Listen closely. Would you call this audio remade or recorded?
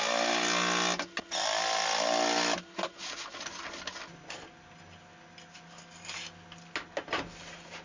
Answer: recorded